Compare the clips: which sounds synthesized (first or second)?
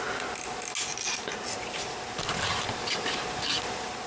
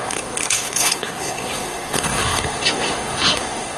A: second